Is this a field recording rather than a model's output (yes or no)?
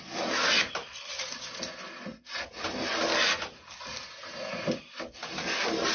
yes